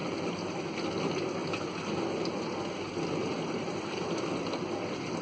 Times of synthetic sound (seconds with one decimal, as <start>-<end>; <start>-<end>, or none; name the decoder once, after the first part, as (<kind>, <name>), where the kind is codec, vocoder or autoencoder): 0.0-0.6 (vocoder, BigVGAN v2); 3.2-4.4